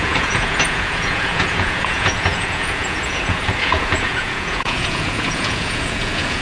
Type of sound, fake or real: fake